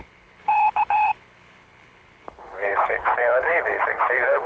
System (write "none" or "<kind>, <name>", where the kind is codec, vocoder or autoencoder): codec, HILCodec